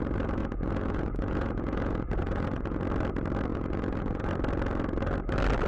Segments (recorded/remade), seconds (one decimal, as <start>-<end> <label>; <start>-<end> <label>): 0.0-0.4 recorded; 0.4-2.8 remade; 2.8-3.5 recorded; 3.5-4.3 remade; 4.3-5.7 recorded